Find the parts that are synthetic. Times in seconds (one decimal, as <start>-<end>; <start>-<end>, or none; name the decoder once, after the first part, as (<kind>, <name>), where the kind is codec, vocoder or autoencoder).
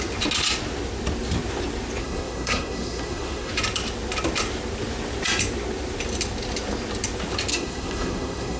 2.0-3.5 (codec, SNAC); 7.5-8.6